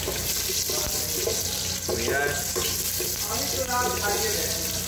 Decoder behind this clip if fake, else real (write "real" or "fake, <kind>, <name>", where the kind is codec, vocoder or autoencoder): real